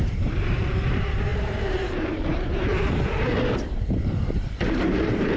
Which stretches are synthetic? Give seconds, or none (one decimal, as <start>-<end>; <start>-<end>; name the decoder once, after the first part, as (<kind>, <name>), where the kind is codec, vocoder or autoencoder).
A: 0.0-5.4 (vocoder, BigVGAN v2)